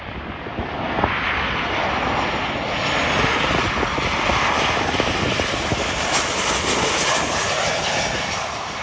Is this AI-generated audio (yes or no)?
no